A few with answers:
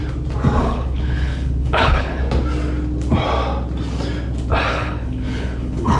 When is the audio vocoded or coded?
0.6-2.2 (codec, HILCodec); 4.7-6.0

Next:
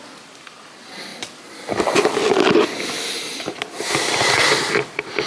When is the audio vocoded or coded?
none

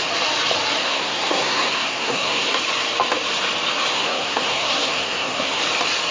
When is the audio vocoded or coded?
0.8-2.6 (codec, SNAC); 3.9-5.6